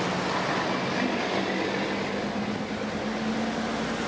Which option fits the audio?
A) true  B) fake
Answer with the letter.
A